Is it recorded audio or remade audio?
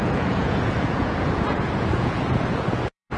remade